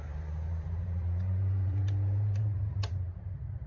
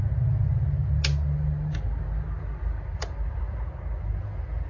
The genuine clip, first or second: second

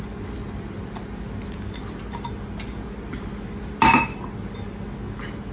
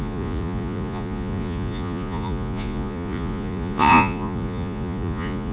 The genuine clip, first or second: first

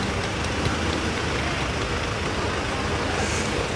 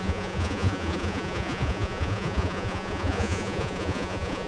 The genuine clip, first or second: first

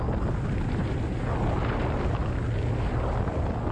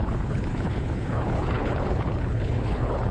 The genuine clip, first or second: first